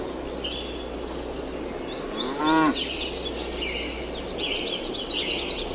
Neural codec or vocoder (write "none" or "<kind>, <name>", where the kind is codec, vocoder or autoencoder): none